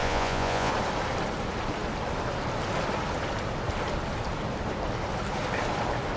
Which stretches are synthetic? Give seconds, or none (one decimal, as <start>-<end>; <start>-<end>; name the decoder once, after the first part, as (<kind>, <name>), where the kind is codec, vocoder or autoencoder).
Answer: 0.0-0.7 (vocoder, Vocos)